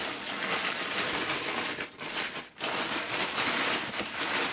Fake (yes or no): no